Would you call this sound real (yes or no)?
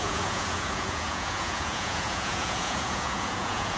no